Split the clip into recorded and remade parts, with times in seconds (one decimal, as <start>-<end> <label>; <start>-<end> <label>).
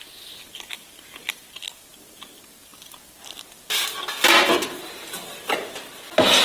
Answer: 0.0-6.4 recorded